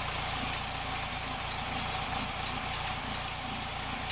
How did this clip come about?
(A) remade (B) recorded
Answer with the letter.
B